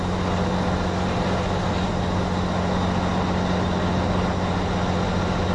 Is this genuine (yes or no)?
yes